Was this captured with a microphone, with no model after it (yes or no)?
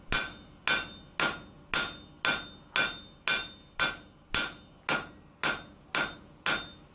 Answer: yes